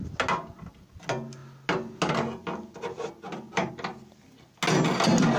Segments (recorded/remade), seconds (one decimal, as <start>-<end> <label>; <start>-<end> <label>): 0.0-5.4 recorded